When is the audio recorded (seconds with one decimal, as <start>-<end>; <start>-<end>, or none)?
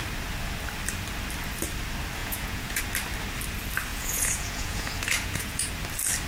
0.0-2.2; 2.8-3.9; 5.7-6.3